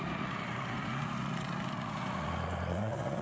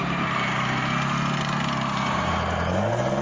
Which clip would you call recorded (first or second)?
second